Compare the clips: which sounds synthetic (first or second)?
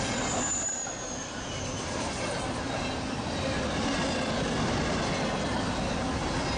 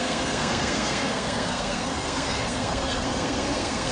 second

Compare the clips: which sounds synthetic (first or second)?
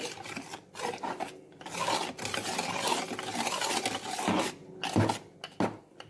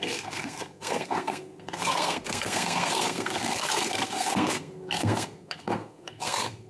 second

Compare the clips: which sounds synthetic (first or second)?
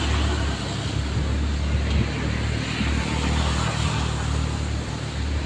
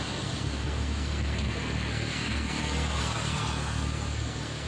second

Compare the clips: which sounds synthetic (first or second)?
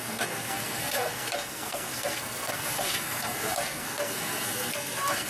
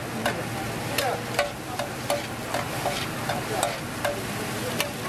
first